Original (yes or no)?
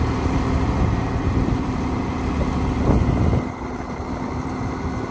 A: yes